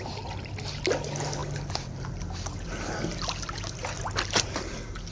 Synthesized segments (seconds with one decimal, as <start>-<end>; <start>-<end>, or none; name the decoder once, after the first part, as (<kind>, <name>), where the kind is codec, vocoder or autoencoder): none